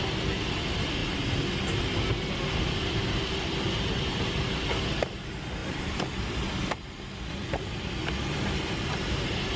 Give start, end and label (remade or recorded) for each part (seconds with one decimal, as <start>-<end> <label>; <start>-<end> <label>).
0.0-1.0 recorded; 1.0-1.5 remade; 1.5-5.6 recorded; 5.6-7.9 remade; 7.9-9.6 recorded